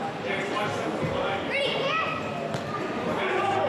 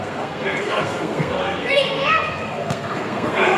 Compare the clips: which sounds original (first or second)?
first